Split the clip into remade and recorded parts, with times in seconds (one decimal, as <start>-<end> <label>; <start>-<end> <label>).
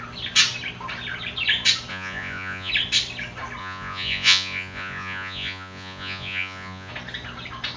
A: 0.0-1.9 recorded; 1.9-2.7 remade; 2.7-3.6 recorded; 3.6-6.9 remade; 6.9-7.8 recorded